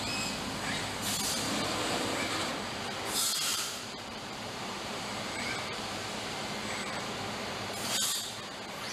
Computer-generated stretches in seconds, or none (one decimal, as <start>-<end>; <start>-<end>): 3.5-7.1